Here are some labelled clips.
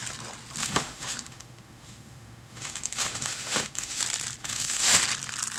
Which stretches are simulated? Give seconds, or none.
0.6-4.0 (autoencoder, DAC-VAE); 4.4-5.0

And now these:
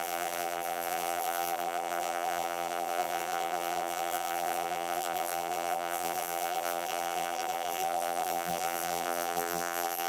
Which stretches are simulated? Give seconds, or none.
0.0-10.1 (vocoder, BigVGAN v2)

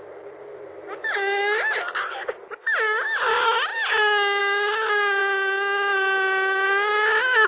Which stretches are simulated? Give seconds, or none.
none

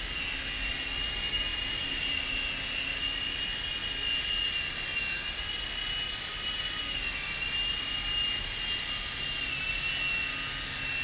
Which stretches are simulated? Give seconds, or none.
1.5-2.8 (vocoder, BigVGAN v2)

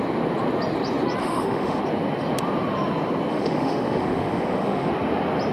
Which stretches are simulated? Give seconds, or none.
1.2-1.8 (autoencoder, DAC-VAE); 3.3-4.9

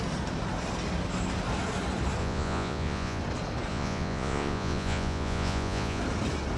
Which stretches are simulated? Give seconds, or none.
2.2-3.2 (vocoder, Vocos); 3.7-6.0